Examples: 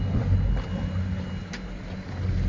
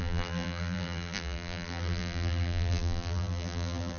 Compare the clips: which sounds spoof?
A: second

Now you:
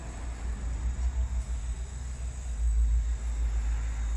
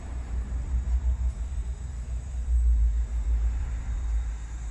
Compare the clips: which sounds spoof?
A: second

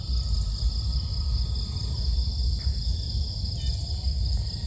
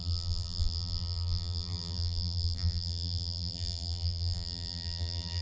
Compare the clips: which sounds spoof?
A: second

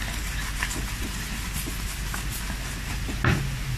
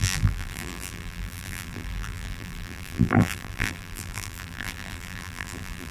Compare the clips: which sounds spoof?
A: second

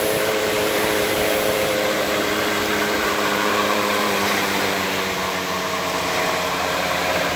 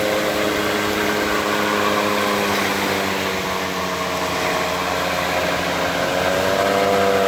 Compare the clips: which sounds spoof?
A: first